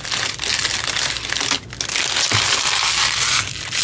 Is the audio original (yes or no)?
yes